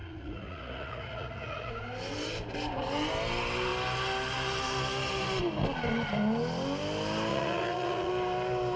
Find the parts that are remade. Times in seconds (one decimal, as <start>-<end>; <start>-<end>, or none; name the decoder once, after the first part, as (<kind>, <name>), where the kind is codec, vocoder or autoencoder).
0.0-1.7 (vocoder, Vocos); 7.3-8.1